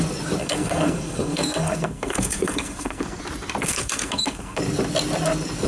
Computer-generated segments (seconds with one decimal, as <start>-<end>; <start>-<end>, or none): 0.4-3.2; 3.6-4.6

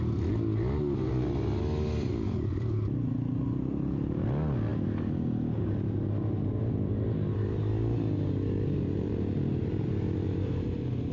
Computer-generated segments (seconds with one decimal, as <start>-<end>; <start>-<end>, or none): none

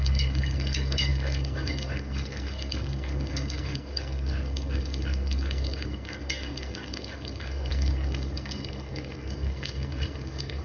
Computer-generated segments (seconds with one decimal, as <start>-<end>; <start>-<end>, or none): 0.0-10.6

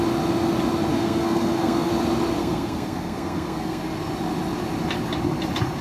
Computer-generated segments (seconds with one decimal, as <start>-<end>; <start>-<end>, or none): 0.9-1.9; 2.4-3.8

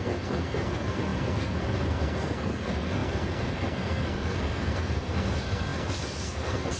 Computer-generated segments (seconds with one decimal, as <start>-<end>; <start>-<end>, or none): 0.0-6.8

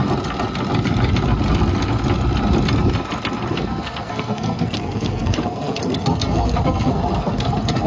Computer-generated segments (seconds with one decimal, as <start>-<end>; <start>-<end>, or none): 3.5-7.9